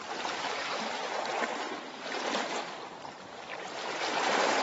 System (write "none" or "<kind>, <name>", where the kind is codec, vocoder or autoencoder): vocoder, BigVGAN v2